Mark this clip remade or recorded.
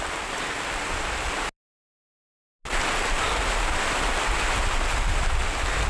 recorded